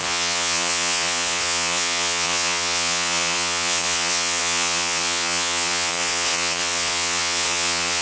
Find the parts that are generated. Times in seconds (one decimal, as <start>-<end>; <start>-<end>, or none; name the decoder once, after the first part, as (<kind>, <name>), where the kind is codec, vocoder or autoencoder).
0.0-8.0 (vocoder, Vocos)